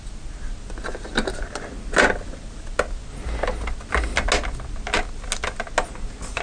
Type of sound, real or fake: real